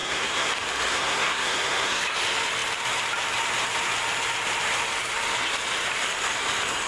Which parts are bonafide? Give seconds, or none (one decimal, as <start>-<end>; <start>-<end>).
0.5-0.9; 2.0-6.9